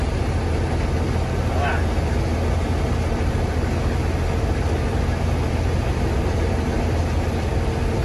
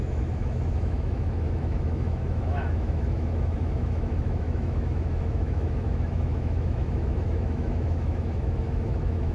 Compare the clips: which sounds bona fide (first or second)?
first